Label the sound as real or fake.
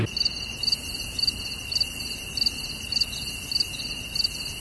real